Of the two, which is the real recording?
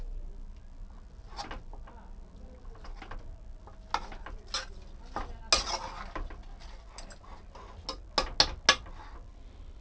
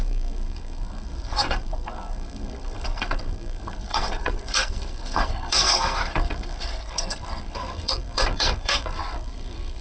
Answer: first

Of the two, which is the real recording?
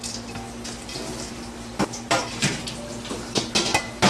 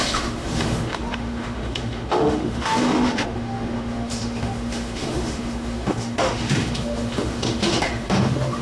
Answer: first